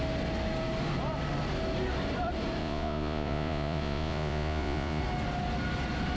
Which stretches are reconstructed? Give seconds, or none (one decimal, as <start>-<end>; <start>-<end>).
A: 2.6-5.0